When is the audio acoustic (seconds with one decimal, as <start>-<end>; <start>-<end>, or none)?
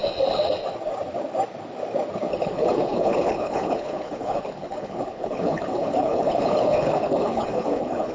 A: 0.0-2.4